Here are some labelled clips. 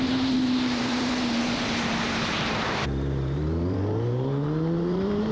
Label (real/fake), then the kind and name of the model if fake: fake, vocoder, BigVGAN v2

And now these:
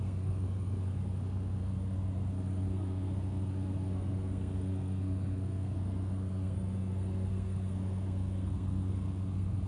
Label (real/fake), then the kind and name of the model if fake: fake, codec, SNAC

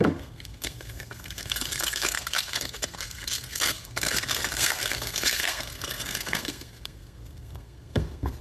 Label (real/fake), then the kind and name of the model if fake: fake, codec, SNAC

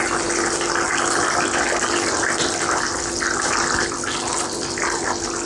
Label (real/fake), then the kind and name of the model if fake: real